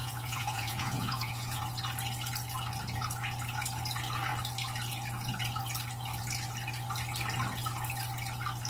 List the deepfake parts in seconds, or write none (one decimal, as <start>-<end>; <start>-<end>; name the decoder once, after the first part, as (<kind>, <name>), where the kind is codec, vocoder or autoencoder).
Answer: 0.0-1.6 (vocoder, Vocos)